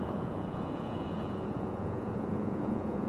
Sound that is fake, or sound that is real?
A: fake